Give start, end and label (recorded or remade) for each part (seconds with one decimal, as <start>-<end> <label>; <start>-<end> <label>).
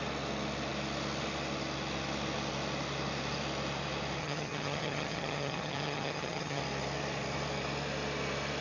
0.0-4.2 recorded; 4.2-6.6 remade; 6.6-8.6 recorded